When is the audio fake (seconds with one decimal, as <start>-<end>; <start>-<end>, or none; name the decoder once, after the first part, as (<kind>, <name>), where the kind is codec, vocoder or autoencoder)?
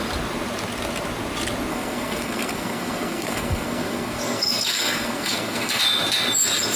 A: 1.7-5.8 (codec, SNAC)